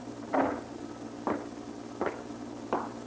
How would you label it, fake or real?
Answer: real